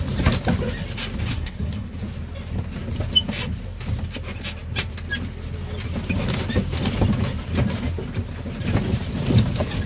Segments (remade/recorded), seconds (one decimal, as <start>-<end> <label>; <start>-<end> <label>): 0.0-1.3 recorded; 1.3-1.9 remade; 1.9-9.9 recorded